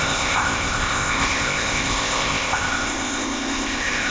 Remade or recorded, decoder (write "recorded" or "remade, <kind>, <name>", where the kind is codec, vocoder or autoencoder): remade, codec, ZipCodec